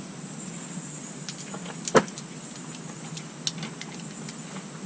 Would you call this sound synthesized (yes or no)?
no